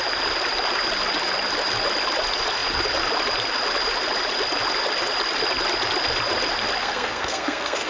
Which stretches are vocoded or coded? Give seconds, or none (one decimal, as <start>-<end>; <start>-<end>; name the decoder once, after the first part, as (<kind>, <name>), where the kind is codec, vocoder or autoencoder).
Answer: 6.8-7.9 (codec, SNAC)